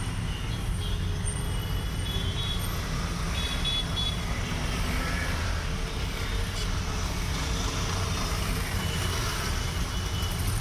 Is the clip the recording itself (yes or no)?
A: yes